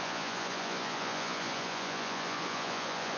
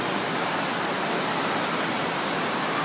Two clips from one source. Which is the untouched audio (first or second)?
second